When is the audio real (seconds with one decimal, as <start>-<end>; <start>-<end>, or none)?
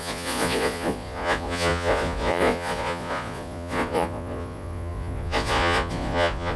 none